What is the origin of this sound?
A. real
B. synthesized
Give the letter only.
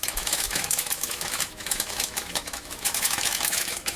B